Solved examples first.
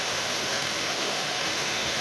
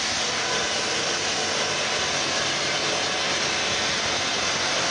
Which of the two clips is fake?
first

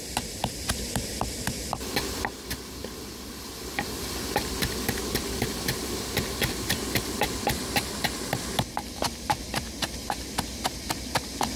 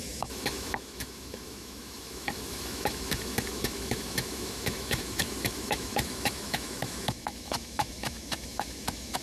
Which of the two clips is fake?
second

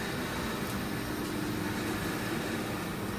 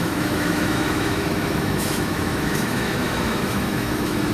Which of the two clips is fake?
second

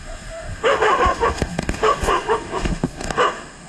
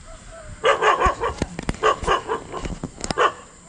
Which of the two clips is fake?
first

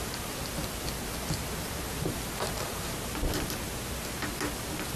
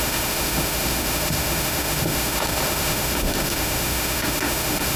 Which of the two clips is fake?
second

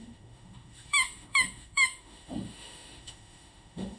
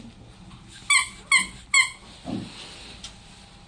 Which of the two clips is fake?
first